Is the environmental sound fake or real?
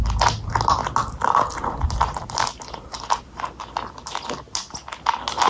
real